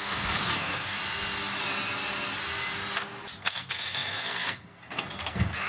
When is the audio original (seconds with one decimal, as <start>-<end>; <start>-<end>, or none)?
1.0-3.4